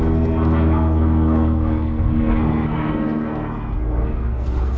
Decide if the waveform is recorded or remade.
remade